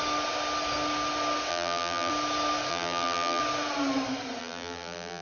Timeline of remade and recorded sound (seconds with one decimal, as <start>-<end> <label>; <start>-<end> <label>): 0.0-1.5 recorded; 1.5-2.1 remade; 2.1-2.7 recorded; 2.7-3.4 remade; 3.4-4.4 recorded; 4.4-5.2 remade